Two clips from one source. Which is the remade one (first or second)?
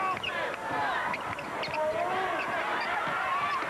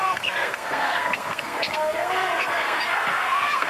second